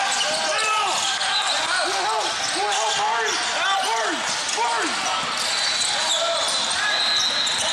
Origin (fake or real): real